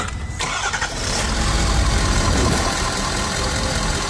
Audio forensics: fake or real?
fake